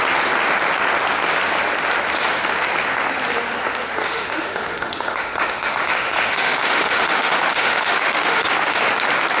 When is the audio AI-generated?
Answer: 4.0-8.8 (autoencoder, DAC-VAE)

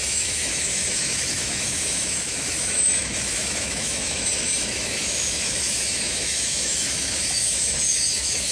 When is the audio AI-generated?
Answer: 0.0-8.5 (autoencoder, DAC-VAE)

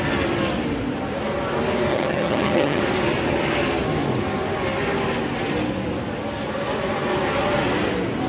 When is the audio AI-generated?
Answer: 1.9-2.8 (vocoder, HiFi-GAN)

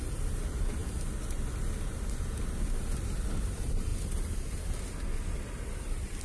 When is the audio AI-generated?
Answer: none